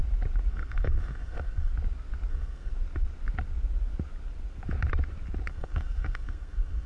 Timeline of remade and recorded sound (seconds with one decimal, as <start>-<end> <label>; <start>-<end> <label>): 0.0-0.5 recorded; 0.5-1.7 remade; 1.7-2.3 recorded; 2.3-2.7 remade; 2.7-5.5 recorded; 5.5-6.9 remade